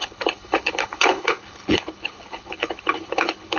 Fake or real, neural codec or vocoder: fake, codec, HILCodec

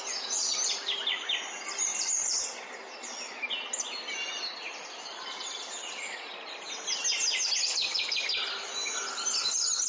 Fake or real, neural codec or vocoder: real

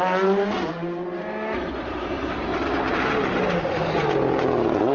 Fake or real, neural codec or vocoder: real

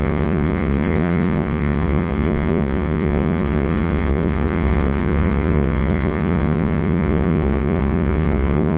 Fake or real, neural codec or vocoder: fake, vocoder, Vocos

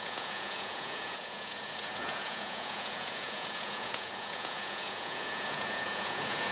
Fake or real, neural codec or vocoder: fake, vocoder, Vocos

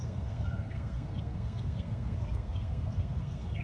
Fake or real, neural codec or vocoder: fake, codec, SNAC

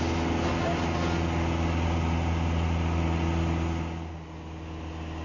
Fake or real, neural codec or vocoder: real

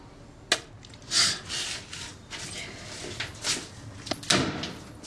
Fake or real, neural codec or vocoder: real